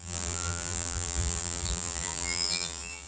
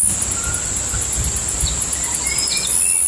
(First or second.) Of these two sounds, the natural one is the second